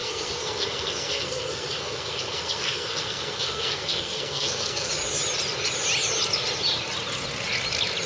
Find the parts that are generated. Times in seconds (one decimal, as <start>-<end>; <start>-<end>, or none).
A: 0.0-4.9